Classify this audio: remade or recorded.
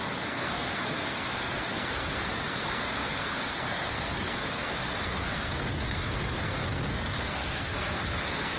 remade